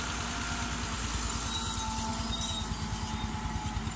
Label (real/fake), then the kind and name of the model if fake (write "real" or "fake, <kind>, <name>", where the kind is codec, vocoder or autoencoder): real